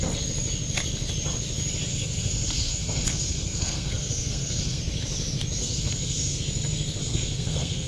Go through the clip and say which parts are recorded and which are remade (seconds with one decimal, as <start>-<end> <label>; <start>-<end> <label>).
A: 0.0-1.9 recorded; 1.9-4.8 remade; 4.8-5.6 recorded; 5.6-6.4 remade; 6.4-7.0 recorded; 7.0-7.9 remade